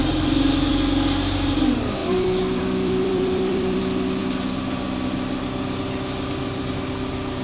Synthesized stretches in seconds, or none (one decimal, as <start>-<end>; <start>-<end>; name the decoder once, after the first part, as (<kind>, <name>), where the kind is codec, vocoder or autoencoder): 0.0-0.7 (vocoder, BigVGAN v2); 2.0-3.8